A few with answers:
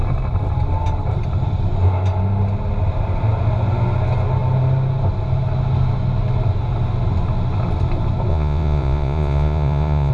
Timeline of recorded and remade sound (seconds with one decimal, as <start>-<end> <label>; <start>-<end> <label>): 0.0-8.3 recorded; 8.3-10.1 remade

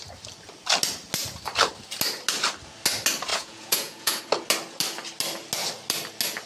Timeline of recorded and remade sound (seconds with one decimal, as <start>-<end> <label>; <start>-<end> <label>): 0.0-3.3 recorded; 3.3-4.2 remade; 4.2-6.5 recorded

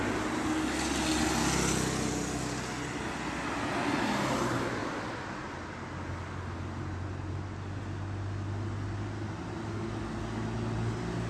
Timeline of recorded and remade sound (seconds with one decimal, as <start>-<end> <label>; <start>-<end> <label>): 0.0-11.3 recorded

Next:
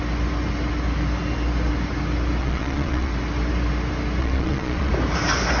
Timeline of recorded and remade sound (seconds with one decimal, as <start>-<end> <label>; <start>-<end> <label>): 0.0-2.4 recorded; 2.4-3.1 remade; 3.1-4.2 recorded; 4.2-4.9 remade; 4.9-5.6 recorded

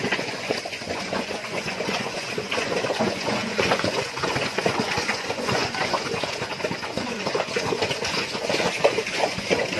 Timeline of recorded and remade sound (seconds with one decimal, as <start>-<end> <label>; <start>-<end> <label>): 0.0-9.8 remade

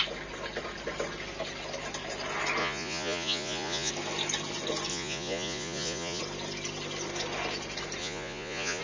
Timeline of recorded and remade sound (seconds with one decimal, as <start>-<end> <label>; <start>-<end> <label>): 0.0-2.6 recorded; 2.6-3.9 remade; 3.9-4.9 recorded; 4.9-6.2 remade; 6.2-8.0 recorded; 8.0-8.8 remade

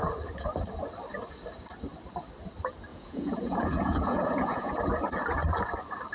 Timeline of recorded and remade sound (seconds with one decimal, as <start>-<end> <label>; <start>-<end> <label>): 0.0-2.9 recorded; 2.9-4.8 remade; 4.8-6.1 recorded